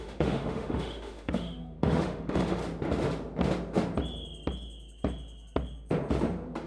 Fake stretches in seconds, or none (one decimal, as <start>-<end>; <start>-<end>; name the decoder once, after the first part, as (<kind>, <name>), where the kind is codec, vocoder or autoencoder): 0.0-2.6 (autoencoder, DAC-VAE)